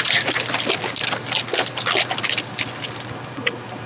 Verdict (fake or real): real